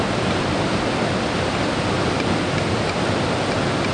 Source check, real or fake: real